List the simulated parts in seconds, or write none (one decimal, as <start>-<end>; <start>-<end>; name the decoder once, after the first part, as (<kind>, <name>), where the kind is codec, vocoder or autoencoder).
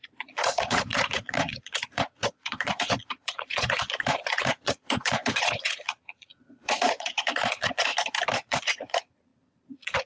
0.0-7.9 (vocoder, Vocos); 8.5-10.1